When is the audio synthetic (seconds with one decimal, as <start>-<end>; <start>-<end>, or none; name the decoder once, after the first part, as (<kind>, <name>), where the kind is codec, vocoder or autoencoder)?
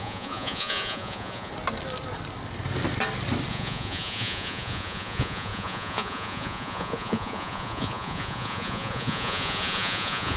0.0-1.5 (vocoder, Vocos); 3.5-10.4